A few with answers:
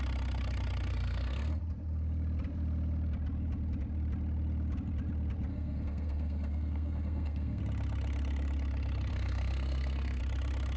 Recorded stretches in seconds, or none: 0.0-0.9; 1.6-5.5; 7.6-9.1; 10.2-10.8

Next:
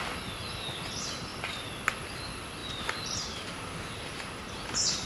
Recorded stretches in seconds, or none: 0.0-5.1